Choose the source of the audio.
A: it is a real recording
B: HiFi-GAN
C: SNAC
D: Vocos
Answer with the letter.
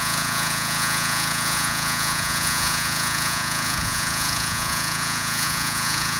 D